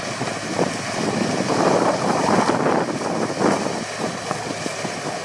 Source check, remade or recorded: recorded